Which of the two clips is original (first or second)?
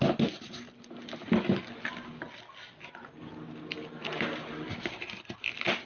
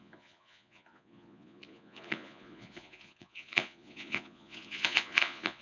first